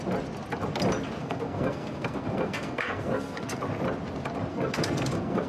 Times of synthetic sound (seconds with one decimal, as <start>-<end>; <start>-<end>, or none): 1.2-3.6; 4.5-5.5

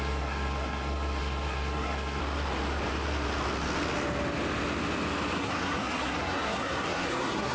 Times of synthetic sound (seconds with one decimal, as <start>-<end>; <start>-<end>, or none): 0.0-2.2; 5.4-7.5

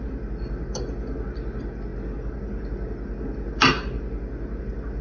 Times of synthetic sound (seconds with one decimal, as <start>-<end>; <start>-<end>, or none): none

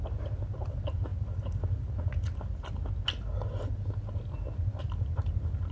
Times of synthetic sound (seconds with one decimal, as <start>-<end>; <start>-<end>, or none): none

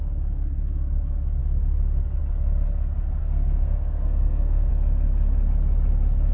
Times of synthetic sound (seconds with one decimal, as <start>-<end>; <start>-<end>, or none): 3.2-4.7

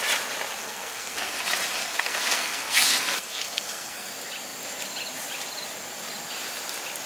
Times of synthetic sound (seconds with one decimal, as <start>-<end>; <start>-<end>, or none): 0.6-1.4; 1.8-4.1

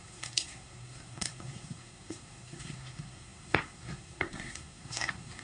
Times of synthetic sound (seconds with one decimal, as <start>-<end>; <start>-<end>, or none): 0.0-5.4

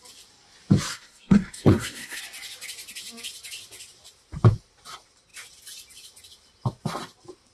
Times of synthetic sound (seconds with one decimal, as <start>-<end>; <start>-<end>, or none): 0.9-2.2